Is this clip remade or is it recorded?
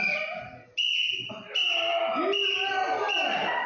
recorded